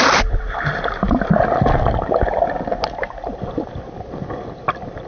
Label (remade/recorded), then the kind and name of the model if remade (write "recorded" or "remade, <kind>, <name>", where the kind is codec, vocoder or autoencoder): recorded